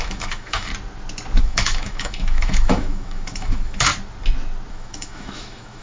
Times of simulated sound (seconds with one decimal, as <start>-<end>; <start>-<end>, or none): 0.0-0.7; 1.4-3.9; 4.7-5.8